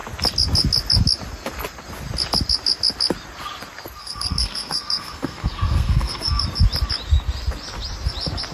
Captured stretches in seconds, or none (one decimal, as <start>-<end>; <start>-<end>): 0.0-4.0; 6.4-8.5